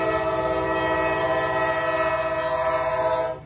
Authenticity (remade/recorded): recorded